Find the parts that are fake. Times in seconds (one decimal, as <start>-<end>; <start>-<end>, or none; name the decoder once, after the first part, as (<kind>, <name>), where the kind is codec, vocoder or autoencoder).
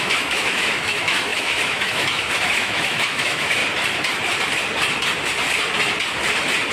0.0-3.6 (autoencoder, DAC-VAE)